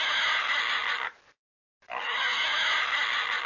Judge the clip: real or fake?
real